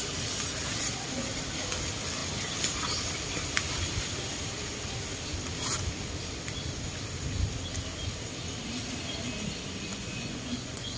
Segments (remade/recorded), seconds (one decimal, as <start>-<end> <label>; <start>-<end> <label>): 0.0-9.9 recorded; 9.9-11.0 remade